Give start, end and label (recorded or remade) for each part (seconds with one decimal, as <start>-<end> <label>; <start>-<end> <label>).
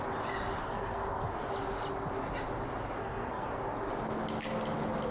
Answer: 0.0-0.6 recorded; 0.6-1.5 remade; 1.5-3.0 recorded; 3.0-3.6 remade; 3.6-5.1 recorded